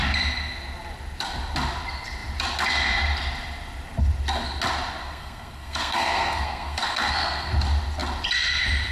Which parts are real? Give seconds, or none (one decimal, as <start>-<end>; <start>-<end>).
0.0-5.0; 7.5-8.9